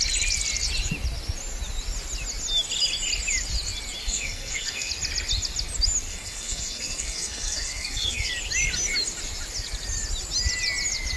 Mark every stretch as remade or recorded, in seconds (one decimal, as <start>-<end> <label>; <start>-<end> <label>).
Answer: 0.0-4.0 recorded; 4.0-4.9 remade; 4.9-6.1 recorded; 6.1-8.3 remade; 8.3-11.2 recorded